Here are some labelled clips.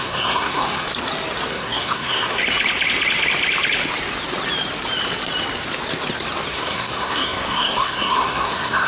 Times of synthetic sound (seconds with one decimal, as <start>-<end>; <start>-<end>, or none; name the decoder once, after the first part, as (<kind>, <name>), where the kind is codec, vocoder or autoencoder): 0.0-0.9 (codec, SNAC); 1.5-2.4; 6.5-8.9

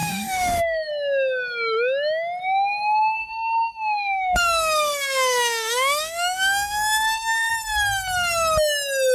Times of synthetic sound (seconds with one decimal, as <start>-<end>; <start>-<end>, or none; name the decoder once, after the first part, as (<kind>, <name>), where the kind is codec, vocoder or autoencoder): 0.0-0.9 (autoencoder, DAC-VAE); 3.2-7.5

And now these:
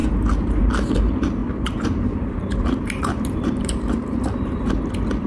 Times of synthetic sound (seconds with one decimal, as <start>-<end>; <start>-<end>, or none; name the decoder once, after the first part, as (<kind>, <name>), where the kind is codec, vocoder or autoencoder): 0.0-0.7 (vocoder, BigVGAN v2); 1.4-4.6

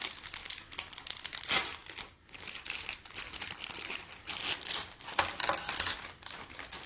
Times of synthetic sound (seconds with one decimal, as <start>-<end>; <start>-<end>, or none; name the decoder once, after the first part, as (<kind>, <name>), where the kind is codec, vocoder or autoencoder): 1.8-4.3 (vocoder, BigVGAN v2)